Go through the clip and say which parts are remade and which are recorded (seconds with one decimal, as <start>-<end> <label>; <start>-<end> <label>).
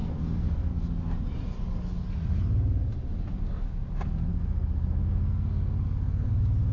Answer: 0.0-0.7 remade; 0.7-4.3 recorded; 4.3-6.3 remade; 6.3-6.7 recorded